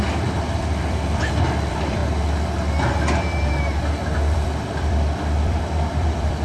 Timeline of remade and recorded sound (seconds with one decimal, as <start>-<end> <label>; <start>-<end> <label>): 0.0-2.0 remade; 2.0-3.8 recorded; 3.8-6.4 remade